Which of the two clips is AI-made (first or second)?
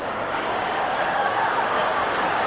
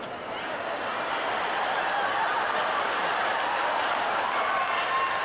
first